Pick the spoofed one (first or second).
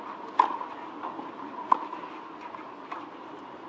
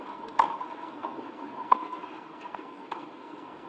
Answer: second